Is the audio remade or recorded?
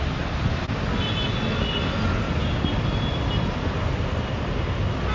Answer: recorded